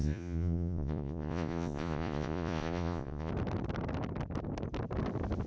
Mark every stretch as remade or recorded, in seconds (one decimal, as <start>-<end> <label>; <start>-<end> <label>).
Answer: 0.0-3.3 remade; 3.3-5.5 recorded